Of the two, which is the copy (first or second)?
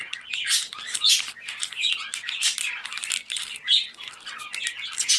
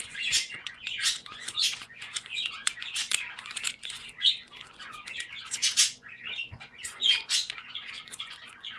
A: second